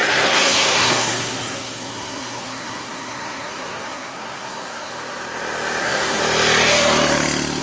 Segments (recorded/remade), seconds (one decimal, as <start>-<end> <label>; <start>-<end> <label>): 0.0-4.9 remade; 4.9-5.8 recorded; 5.8-6.2 remade; 6.2-7.6 recorded